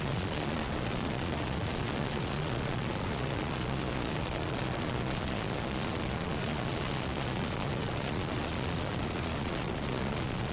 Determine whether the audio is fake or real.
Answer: fake